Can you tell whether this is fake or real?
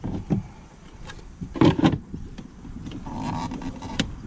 fake